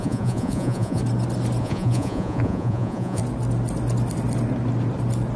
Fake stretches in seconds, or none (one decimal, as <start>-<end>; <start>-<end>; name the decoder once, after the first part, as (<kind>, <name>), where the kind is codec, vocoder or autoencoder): 0.0-1.0 (vocoder, Vocos); 1.6-3.2